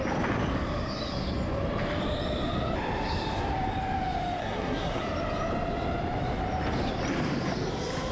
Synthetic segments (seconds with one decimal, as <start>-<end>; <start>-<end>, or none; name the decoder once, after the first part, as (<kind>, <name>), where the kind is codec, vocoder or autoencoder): 4.4-5.0 (codec, SNAC)